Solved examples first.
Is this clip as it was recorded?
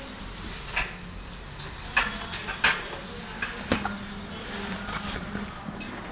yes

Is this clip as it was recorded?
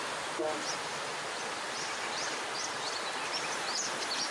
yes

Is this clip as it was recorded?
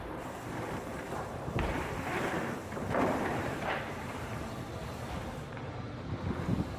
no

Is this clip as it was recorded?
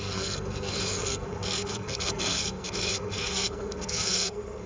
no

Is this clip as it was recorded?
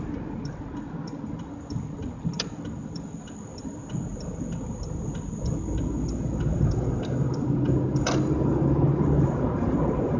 yes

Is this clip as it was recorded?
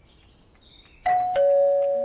yes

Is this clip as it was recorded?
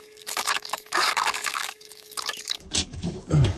no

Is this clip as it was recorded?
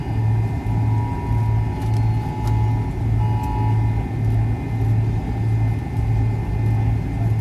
yes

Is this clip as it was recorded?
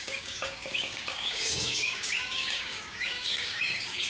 no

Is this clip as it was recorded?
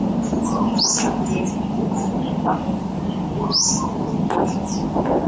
yes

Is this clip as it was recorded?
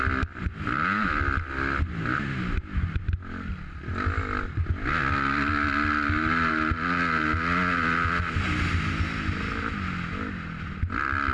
yes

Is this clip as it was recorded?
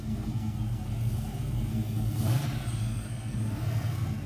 no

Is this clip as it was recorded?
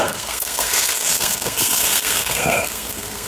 no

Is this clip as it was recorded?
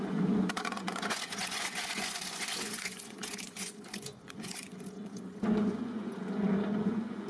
no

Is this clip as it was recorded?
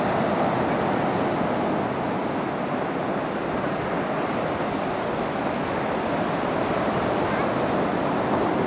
yes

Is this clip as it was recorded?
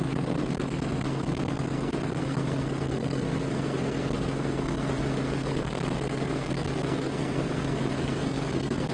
no